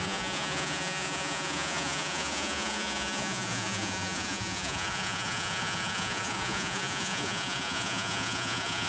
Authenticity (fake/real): fake